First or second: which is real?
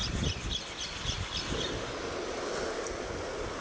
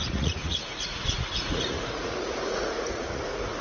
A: first